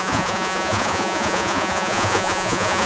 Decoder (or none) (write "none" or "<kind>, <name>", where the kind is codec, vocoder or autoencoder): vocoder, Vocos